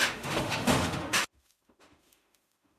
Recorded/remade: remade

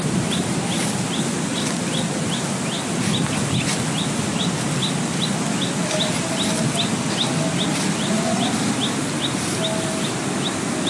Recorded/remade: recorded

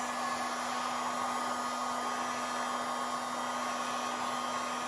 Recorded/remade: recorded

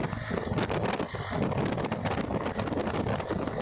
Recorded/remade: recorded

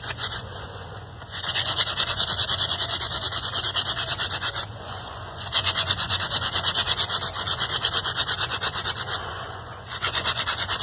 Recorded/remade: remade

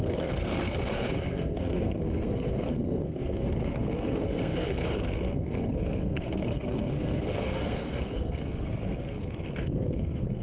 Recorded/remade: remade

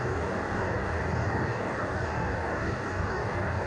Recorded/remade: remade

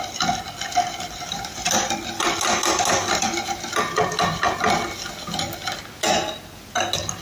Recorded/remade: recorded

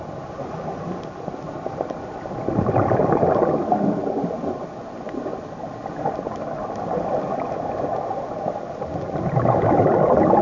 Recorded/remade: recorded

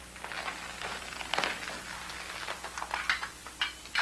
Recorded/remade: recorded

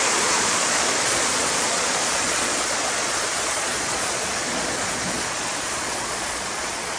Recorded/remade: remade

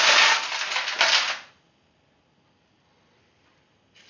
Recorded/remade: recorded